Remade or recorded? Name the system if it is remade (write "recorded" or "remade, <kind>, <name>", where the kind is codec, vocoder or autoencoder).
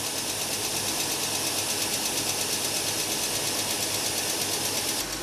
recorded